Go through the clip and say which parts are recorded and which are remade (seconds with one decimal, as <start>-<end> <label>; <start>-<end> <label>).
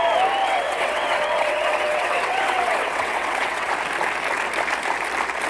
0.0-0.4 recorded; 0.4-3.7 remade; 3.7-5.5 recorded